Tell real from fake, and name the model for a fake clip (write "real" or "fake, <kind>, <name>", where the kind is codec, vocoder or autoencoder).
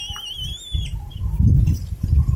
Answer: real